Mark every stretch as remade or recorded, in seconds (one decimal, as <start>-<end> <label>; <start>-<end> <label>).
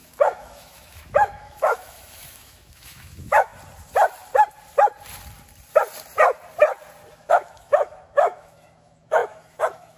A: 0.0-3.5 remade; 3.5-7.1 recorded; 7.1-10.0 remade